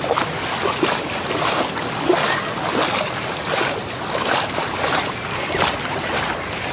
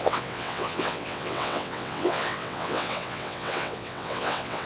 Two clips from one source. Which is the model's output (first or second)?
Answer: second